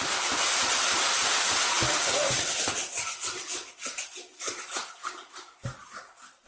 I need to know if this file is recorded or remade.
recorded